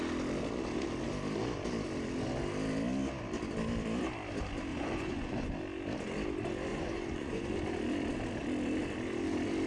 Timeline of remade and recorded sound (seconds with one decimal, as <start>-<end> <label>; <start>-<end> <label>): 0.0-4.7 recorded; 4.7-5.5 remade; 5.5-6.7 recorded; 6.7-7.5 remade; 7.5-9.7 recorded